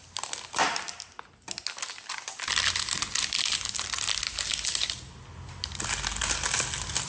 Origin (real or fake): real